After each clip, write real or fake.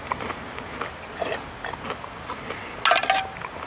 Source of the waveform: real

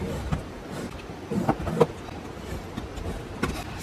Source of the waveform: real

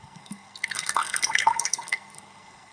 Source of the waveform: fake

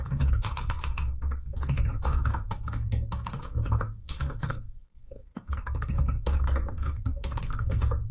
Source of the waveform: fake